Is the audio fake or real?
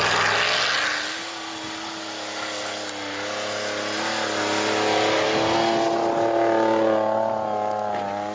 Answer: real